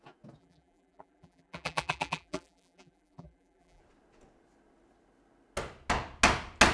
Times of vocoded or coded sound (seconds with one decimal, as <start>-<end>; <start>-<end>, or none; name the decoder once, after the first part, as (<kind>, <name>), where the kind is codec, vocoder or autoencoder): 0.4-3.8 (vocoder, BigVGAN v2)